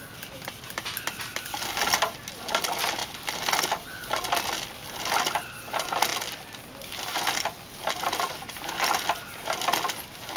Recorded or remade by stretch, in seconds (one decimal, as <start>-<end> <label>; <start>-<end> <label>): 0.0-10.4 recorded